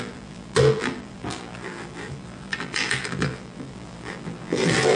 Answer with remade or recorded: remade